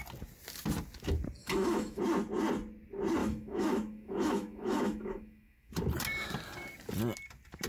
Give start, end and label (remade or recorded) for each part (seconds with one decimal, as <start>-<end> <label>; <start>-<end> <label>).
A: 0.0-1.4 recorded; 1.4-2.0 remade; 2.0-3.2 recorded; 3.2-5.7 remade; 5.7-7.7 recorded